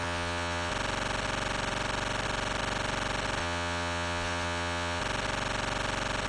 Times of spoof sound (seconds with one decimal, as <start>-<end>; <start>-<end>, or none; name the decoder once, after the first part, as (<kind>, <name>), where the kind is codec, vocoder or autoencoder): 0.0-0.7 (vocoder, WaveNeXt); 3.4-5.0